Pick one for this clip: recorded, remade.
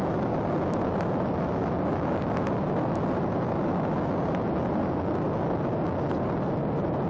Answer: recorded